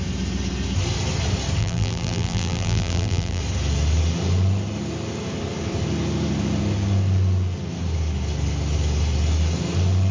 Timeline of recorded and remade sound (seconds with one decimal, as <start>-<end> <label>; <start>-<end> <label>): 0.0-1.6 recorded; 1.6-3.4 remade; 3.4-10.1 recorded